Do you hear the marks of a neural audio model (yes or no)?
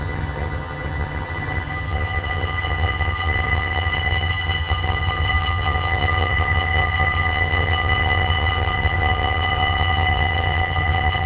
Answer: yes